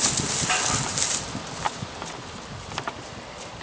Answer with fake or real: real